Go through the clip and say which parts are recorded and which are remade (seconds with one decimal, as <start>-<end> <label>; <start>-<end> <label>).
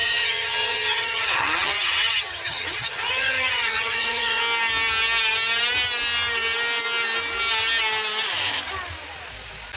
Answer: 0.0-4.4 remade; 4.4-9.8 recorded